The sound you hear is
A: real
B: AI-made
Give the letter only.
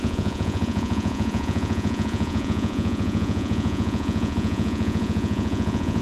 B